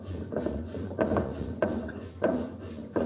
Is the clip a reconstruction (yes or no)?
yes